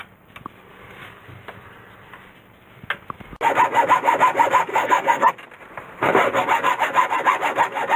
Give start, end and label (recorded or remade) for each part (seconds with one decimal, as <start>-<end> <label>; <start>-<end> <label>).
0.0-4.7 recorded; 4.7-5.3 remade; 5.3-8.0 recorded

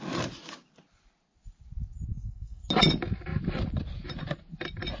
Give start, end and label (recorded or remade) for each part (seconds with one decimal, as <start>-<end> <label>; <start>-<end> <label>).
0.0-2.1 recorded; 2.1-2.6 remade; 2.6-5.0 recorded

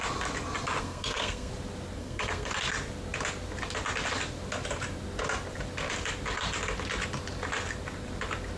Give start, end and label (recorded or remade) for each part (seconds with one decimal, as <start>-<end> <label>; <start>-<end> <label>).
0.0-0.8 recorded; 0.8-1.5 remade; 1.5-2.0 recorded; 2.0-2.5 remade; 2.5-8.6 recorded